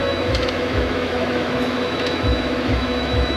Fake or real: fake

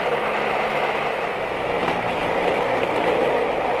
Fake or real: real